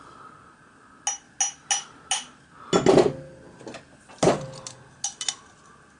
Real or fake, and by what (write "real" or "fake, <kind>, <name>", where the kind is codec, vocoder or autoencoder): real